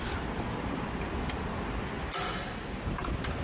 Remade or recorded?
recorded